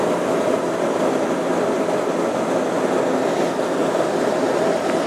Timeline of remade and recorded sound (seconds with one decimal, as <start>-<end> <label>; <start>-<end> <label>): 0.0-5.1 recorded